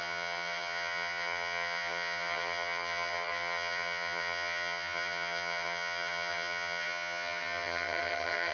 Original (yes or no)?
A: no